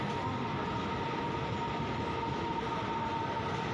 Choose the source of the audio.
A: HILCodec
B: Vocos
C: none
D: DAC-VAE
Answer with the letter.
C